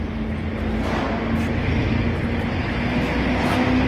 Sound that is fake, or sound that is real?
real